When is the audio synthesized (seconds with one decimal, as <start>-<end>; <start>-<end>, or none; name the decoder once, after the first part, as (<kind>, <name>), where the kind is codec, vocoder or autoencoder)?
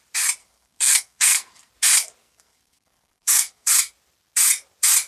0.4-1.7 (codec, SNAC); 2.2-3.7